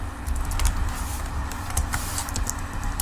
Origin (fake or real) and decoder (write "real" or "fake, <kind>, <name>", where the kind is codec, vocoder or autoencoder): real